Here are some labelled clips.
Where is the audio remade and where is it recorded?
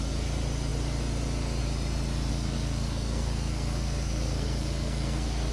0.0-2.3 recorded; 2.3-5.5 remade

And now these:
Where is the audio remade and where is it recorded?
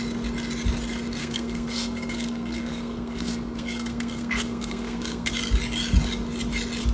0.0-1.2 recorded; 1.2-5.3 remade; 5.3-6.9 recorded